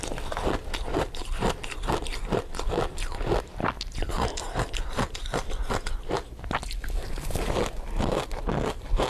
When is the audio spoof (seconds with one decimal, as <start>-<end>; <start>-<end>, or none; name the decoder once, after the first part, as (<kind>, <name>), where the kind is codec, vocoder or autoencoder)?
none

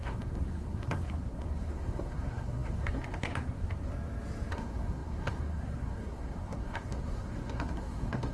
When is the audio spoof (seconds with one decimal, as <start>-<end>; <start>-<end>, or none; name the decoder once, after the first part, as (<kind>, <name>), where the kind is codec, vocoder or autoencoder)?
0.0-3.9 (codec, SNAC); 4.5-8.3

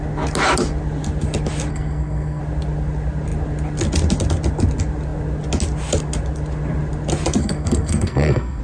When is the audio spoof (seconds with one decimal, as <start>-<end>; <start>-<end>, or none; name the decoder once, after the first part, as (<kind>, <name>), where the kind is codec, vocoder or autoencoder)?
1.7-2.4 (codec, SNAC); 7.4-8.6